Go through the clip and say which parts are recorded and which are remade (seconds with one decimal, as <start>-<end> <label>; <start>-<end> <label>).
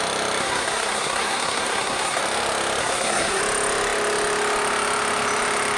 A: 0.0-0.4 recorded; 0.4-2.2 remade; 2.2-2.8 recorded; 2.8-3.4 remade; 3.4-5.8 recorded